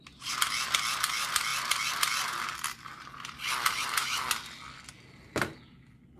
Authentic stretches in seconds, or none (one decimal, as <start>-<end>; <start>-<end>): 0.0-6.2

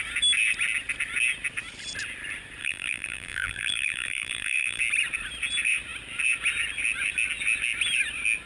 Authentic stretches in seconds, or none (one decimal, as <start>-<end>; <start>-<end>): 0.0-2.6; 4.8-8.5

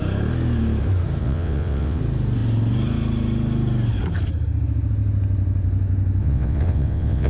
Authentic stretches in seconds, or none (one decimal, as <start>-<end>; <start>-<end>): 0.0-1.2; 2.0-6.2

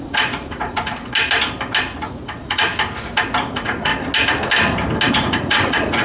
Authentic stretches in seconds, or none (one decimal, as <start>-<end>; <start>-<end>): 1.0-2.1; 2.7-3.5; 3.9-5.1